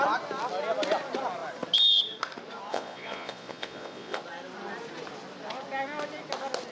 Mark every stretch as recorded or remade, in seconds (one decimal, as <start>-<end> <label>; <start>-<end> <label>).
0.0-2.7 recorded; 2.7-4.2 remade; 4.2-6.7 recorded